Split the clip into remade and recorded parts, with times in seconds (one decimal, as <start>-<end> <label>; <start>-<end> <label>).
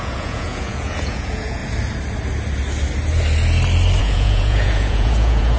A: 0.0-1.6 remade; 1.6-4.0 recorded; 4.0-5.6 remade